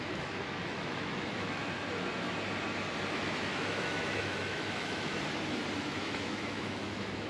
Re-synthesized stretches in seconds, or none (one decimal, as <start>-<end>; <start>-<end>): 0.0-1.6; 3.1-5.1; 5.8-7.3